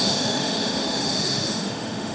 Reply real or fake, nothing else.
fake